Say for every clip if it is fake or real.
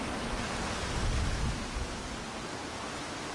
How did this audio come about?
real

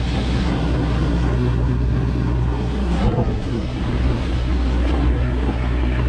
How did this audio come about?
fake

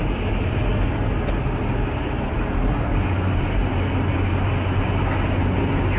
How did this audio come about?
real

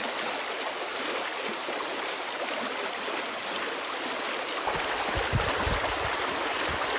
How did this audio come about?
real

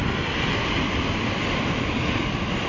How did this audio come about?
real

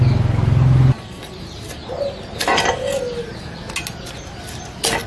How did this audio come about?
real